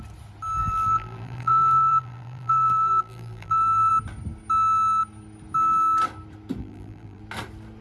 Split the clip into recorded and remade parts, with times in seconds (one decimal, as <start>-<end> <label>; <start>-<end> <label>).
0.0-0.6 recorded; 0.6-3.9 remade; 3.9-6.6 recorded; 6.6-7.2 remade; 7.2-7.8 recorded